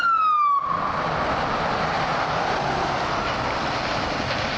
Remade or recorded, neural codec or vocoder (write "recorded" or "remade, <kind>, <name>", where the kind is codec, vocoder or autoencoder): recorded